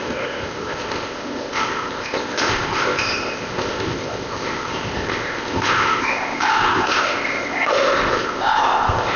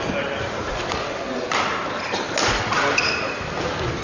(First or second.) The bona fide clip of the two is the second